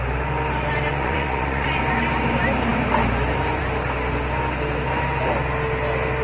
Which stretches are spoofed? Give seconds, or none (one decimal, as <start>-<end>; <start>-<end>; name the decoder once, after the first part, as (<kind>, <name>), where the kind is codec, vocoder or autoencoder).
0.9-1.8 (vocoder, Vocos)